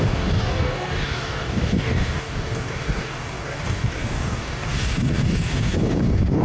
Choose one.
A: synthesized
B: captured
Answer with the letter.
A